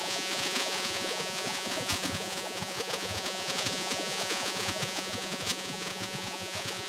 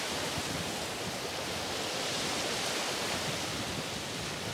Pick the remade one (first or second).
first